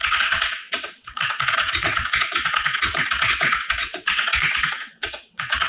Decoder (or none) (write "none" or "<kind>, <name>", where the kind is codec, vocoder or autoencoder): vocoder, WaveNeXt